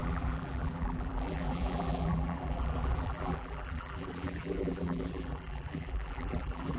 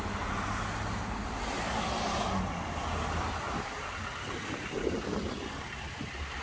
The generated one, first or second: first